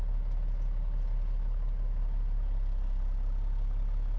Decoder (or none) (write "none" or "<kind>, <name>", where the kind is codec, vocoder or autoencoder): none